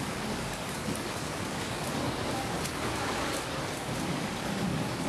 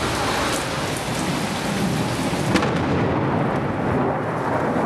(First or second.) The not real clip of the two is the first